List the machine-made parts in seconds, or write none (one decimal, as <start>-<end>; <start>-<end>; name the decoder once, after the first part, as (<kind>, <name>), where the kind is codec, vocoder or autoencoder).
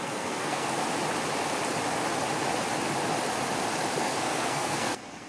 0.0-0.8 (codec, SNAC); 4.0-5.3